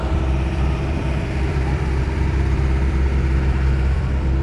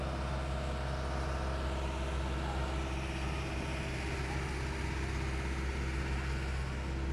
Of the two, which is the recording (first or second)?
second